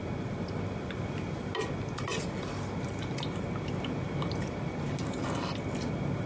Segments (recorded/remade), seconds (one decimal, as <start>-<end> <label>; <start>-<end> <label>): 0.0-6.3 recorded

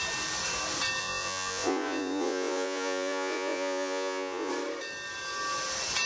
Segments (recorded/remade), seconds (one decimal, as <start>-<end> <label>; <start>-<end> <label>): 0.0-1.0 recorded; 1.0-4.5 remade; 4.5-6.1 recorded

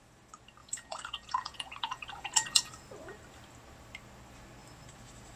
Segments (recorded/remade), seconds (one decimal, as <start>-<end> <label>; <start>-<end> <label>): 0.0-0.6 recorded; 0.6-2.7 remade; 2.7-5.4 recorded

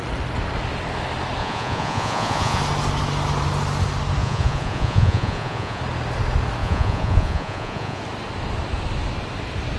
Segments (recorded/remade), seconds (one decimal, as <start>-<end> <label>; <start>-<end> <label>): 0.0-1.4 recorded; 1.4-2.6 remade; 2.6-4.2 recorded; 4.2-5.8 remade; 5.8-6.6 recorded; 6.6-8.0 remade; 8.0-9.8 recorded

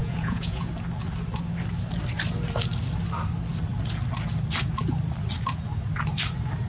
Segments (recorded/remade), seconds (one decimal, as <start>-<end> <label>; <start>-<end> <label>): 0.0-0.7 remade; 0.7-6.7 recorded

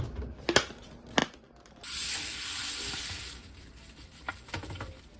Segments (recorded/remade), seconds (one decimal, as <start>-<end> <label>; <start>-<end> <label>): 0.0-5.2 recorded

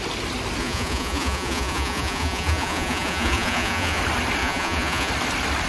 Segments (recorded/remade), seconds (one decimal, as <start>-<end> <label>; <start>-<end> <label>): 0.0-0.6 recorded; 0.6-4.0 remade; 4.0-4.4 recorded; 4.4-5.1 remade; 5.1-5.7 recorded